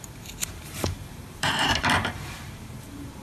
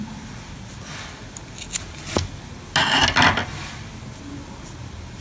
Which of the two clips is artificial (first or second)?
first